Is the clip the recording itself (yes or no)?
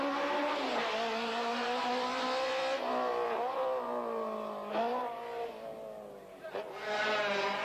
yes